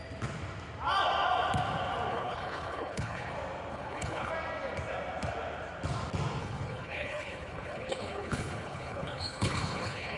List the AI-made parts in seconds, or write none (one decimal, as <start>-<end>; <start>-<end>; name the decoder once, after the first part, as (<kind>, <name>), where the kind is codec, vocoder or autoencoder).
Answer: 2.1-3.3 (codec, HILCodec); 3.7-4.3; 6.4-10.2